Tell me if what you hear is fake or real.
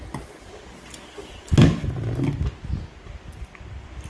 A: real